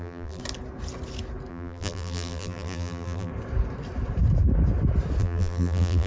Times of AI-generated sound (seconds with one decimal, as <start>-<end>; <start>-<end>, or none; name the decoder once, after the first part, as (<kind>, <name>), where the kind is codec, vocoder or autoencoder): 0.0-0.4 (vocoder, BigVGAN v2); 1.5-3.3; 5.2-6.1